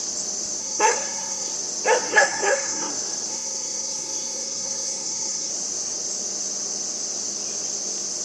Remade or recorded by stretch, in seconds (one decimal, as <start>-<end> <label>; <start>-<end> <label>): 0.0-0.6 recorded; 0.6-1.5 remade; 1.5-2.1 recorded; 2.1-2.9 remade; 2.9-3.3 recorded; 3.3-5.5 remade; 5.5-8.2 recorded